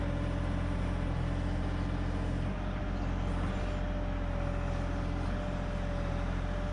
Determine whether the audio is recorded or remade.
recorded